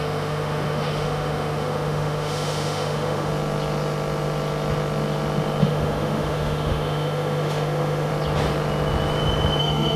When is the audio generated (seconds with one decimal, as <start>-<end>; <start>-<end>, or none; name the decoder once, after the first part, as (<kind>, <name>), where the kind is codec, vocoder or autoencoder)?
0.0-3.3 (autoencoder, DAC-VAE); 5.6-8.1; 9.6-10.0